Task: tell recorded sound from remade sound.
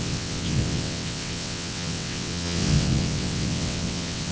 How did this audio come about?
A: remade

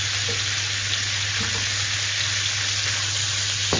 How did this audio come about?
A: recorded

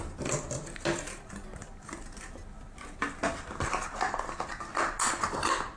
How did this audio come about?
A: recorded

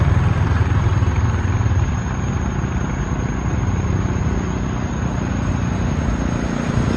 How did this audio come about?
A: recorded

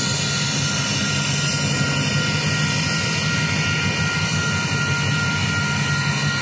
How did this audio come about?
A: recorded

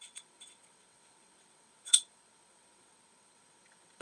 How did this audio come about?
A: remade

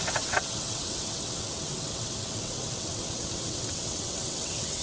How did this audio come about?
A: remade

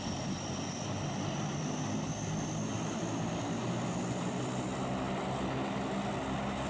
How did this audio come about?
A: recorded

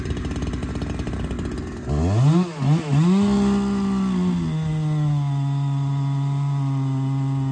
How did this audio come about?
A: recorded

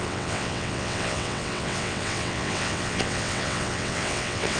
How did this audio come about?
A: remade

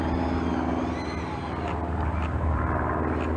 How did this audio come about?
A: recorded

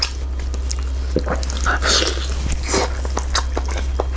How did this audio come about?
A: recorded